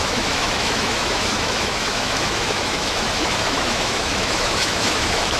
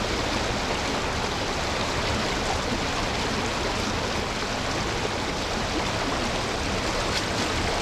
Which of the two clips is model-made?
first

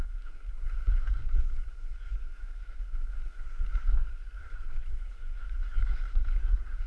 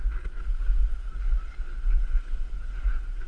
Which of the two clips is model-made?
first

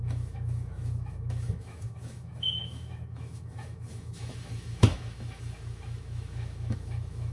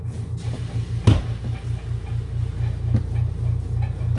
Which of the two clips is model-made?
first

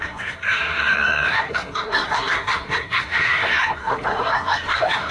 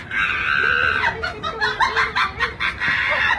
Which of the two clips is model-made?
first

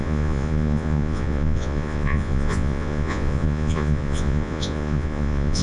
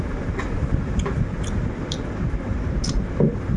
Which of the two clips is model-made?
first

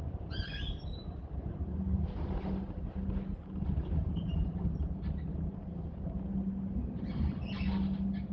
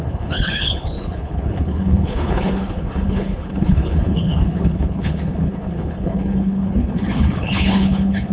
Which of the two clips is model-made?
second